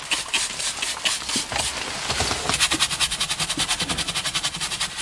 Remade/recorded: recorded